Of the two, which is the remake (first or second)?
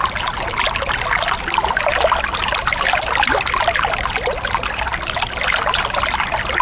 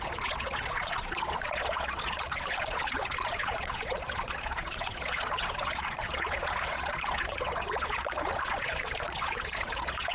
second